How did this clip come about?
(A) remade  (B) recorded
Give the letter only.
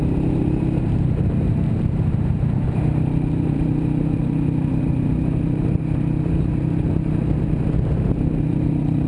A